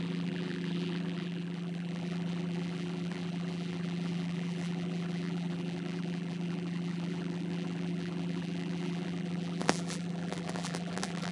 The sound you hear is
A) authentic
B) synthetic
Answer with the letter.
B